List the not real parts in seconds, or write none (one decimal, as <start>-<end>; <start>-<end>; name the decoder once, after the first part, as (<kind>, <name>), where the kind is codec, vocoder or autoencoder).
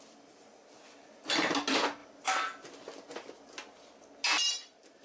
none